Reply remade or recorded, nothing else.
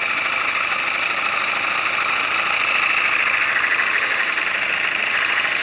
recorded